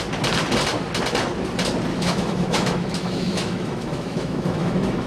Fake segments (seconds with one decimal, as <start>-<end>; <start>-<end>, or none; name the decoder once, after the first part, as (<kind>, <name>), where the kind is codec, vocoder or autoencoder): 1.9-5.1 (autoencoder, DAC-VAE)